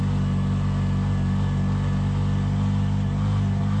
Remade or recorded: recorded